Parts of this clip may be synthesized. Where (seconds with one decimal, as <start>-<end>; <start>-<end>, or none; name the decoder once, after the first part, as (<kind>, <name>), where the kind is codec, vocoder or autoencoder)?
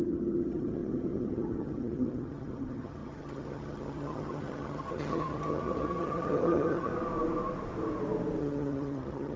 0.0-6.9 (vocoder, HiFi-GAN); 8.4-9.4